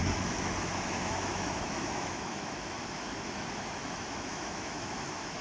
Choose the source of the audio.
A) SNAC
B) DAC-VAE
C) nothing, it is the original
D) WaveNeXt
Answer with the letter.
B